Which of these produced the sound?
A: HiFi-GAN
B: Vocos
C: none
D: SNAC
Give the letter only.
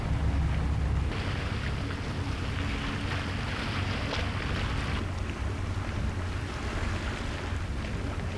C